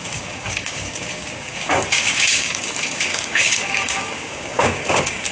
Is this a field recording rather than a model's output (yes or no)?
no